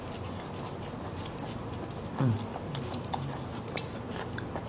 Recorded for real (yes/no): yes